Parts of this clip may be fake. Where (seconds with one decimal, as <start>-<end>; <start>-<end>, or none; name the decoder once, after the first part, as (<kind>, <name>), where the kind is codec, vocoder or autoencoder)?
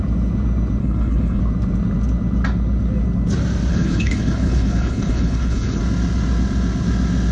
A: 0.8-1.4 (codec, HILCodec); 3.7-5.8